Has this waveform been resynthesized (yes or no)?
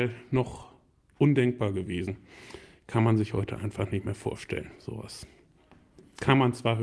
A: no